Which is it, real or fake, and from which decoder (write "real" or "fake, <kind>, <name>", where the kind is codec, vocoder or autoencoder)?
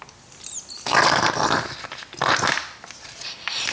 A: real